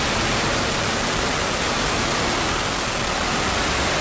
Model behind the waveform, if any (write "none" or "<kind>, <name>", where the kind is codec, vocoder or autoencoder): none